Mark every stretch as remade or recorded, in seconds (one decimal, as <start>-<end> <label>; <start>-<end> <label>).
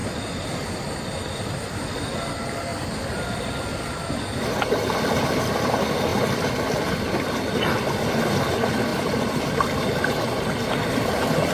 0.0-2.7 recorded; 2.7-4.5 remade; 4.5-11.5 recorded